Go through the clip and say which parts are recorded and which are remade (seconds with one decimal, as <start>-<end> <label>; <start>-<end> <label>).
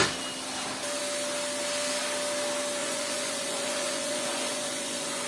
0.0-2.8 recorded; 2.8-5.3 remade